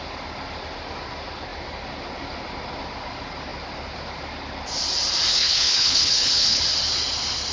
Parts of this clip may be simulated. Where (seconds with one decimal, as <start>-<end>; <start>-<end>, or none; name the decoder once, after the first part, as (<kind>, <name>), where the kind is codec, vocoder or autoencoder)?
5.3-6.6 (codec, HILCodec)